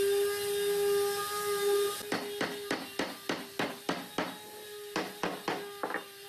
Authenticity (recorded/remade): recorded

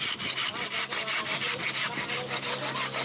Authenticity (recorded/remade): recorded